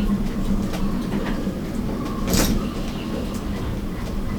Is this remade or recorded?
recorded